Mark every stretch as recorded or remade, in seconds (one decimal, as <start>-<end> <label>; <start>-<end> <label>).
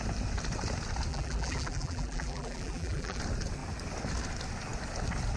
0.0-1.1 recorded; 1.1-3.2 remade; 3.2-5.4 recorded